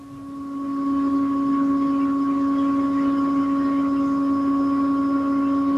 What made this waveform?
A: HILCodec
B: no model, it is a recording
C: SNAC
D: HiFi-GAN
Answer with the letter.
B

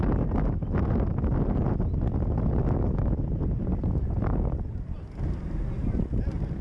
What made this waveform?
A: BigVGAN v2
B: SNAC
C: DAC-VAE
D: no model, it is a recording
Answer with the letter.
D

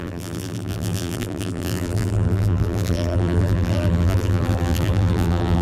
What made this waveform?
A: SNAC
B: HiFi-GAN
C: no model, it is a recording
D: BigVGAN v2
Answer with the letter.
D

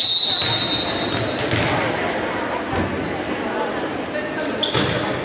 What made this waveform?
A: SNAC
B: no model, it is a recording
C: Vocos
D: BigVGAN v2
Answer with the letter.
B